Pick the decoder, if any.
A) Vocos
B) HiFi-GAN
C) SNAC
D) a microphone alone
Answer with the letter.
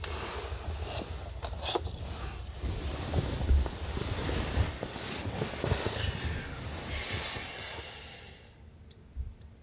D